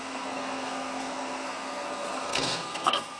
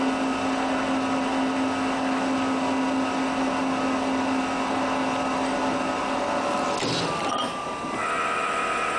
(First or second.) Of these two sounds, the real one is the second